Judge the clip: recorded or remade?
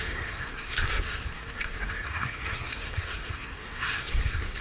remade